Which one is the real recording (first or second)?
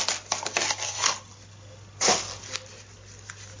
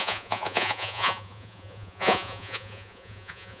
first